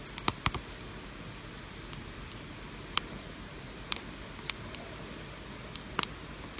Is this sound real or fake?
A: real